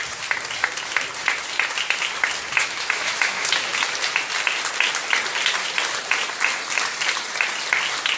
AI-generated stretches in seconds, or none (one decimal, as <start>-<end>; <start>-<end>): 2.6-3.5